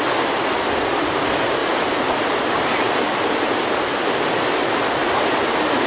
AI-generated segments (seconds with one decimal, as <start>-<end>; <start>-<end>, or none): 1.6-2.8; 5.0-5.9